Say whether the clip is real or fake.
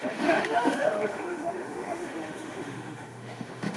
fake